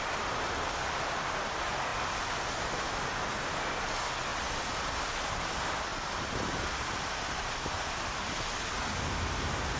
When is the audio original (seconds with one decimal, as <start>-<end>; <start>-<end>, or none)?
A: 0.0-9.8